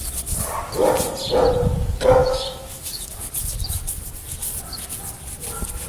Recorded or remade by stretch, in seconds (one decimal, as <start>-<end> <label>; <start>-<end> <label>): 0.0-2.2 recorded; 2.2-3.2 remade; 3.2-5.9 recorded